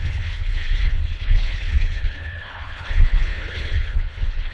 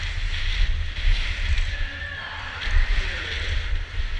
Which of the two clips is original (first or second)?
second